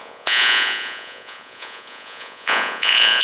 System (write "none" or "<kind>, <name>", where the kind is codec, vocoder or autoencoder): vocoder, Vocos